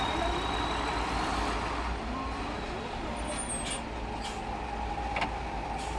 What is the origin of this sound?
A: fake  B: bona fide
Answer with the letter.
B